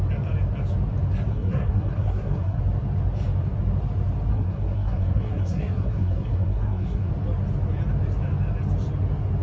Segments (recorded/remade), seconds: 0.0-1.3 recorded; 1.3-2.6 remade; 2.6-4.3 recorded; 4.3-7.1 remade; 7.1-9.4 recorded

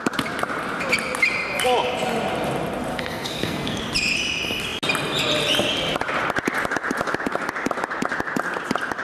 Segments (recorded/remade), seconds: 0.0-2.9 recorded; 2.9-3.8 remade; 3.8-9.0 recorded

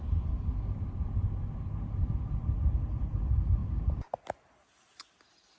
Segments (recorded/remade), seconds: 0.0-5.6 recorded

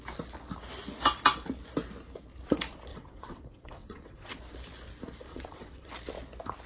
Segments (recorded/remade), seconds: 0.0-2.9 recorded; 2.9-4.4 remade; 4.4-5.3 recorded; 5.3-5.9 remade; 5.9-6.7 recorded

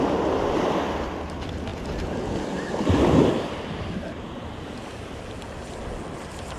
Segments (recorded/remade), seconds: 0.0-6.6 recorded